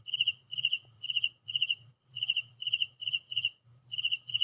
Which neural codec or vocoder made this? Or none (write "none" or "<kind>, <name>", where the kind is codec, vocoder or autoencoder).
vocoder, Vocos